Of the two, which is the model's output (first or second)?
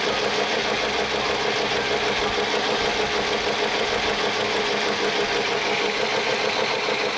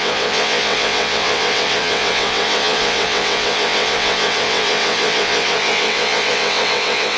second